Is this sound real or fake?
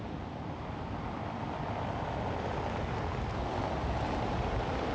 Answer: real